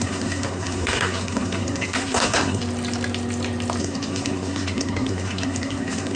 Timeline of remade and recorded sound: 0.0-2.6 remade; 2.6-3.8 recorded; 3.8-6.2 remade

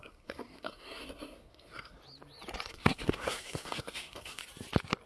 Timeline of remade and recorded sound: 0.0-2.0 remade; 2.0-2.7 recorded; 2.7-4.4 remade; 4.4-5.1 recorded

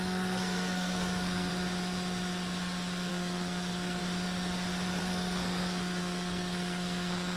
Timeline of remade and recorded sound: 0.0-1.5 remade; 1.5-3.1 recorded; 3.1-4.0 remade; 4.0-5.0 recorded; 5.0-7.4 remade